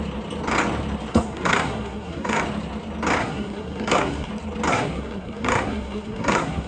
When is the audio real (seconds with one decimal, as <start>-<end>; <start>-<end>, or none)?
0.0-1.1; 2.4-3.2; 4.3-4.7